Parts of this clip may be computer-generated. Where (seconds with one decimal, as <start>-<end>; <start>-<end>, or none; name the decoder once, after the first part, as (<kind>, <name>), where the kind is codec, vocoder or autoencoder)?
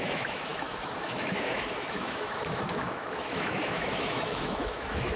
0.0-5.2 (autoencoder, DAC-VAE)